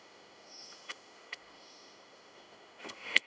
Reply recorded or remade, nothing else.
remade